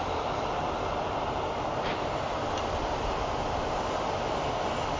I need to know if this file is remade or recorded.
recorded